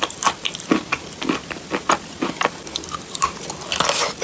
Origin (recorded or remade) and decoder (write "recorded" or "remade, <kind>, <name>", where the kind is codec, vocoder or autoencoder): recorded